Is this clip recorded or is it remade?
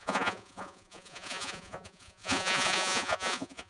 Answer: remade